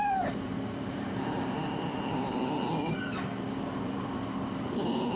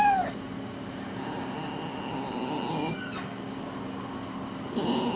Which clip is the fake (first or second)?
first